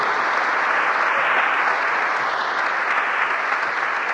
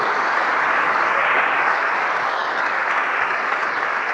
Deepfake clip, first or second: second